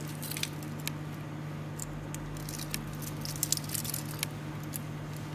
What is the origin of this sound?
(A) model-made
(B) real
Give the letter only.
B